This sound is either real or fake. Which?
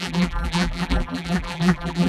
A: fake